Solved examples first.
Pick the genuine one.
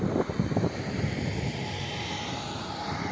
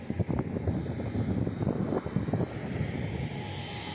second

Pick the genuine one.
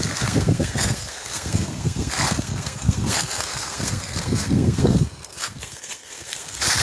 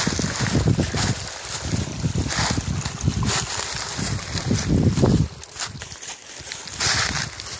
second